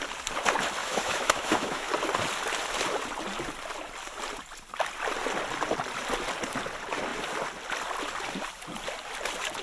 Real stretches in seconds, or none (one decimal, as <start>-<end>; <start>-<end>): 0.0-0.8; 1.9-9.6